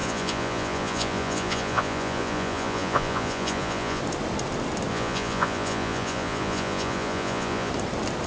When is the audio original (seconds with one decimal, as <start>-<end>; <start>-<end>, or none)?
4.0-4.9; 7.7-8.3